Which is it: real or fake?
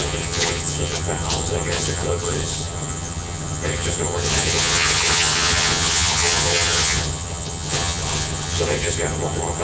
fake